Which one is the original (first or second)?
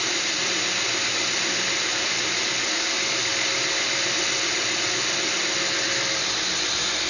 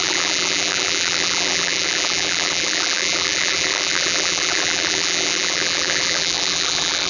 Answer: first